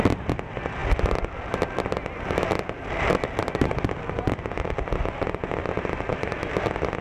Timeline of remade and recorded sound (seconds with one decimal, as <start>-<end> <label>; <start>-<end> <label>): 0.0-7.0 recorded

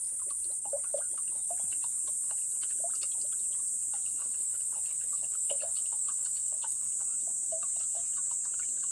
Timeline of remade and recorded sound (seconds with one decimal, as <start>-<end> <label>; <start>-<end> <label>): 0.0-4.2 recorded; 4.2-6.9 remade; 6.9-8.9 recorded